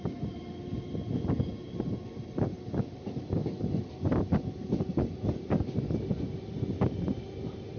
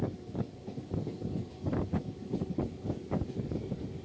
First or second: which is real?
first